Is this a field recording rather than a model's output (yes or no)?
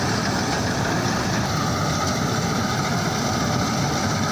no